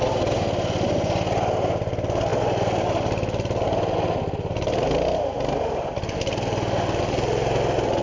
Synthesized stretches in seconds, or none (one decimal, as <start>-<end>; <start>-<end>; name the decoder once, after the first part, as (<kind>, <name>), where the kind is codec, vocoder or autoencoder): none

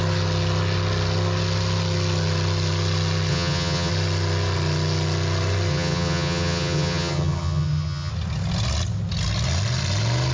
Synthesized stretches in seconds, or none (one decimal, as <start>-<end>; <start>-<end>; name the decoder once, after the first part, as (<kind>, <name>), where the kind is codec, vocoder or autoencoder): 3.3-3.9 (vocoder, HiFi-GAN); 5.7-8.1